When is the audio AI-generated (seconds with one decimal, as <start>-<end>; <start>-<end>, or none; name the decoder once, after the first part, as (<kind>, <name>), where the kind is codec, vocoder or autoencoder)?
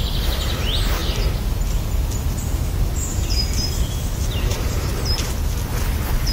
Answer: 4.5-5.3 (vocoder, BigVGAN v2)